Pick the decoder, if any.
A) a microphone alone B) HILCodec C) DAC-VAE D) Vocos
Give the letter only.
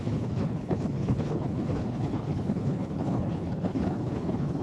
B